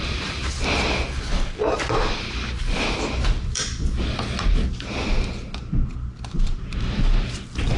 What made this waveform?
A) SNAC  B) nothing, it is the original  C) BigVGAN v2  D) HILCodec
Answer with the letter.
B